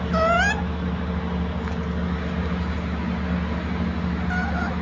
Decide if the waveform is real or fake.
real